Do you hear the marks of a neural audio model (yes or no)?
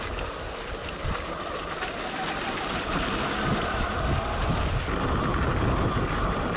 no